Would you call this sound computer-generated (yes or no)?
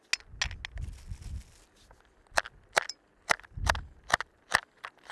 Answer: no